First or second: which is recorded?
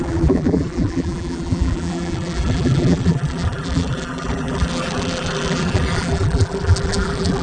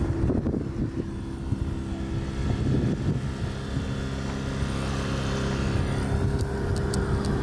second